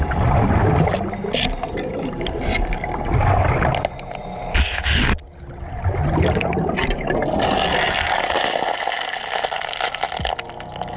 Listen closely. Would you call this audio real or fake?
real